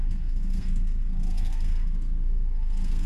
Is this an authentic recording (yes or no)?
no